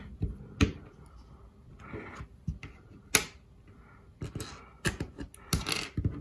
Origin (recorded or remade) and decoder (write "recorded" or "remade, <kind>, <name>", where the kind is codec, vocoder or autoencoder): recorded